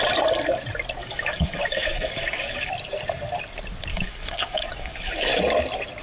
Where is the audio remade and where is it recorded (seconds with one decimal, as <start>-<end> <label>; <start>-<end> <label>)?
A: 0.0-1.0 recorded; 1.0-2.7 remade; 2.7-3.9 recorded; 3.9-5.4 remade; 5.4-6.0 recorded